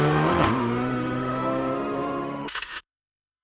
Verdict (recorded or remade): remade